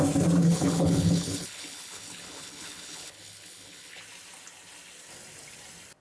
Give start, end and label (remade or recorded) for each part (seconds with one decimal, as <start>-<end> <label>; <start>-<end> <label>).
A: 0.0-0.4 recorded; 0.4-4.0 remade; 4.0-6.0 recorded